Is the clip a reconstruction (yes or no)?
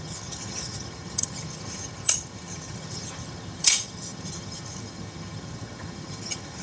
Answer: yes